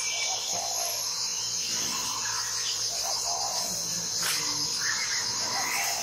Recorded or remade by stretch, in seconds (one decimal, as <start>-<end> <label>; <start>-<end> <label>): 0.0-6.0 recorded